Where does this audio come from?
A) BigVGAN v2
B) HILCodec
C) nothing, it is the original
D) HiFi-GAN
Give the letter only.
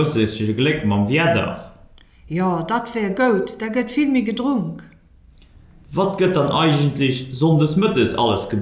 C